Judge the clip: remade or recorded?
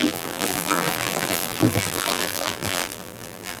remade